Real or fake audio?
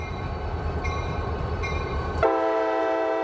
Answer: fake